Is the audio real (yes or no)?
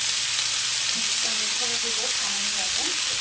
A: yes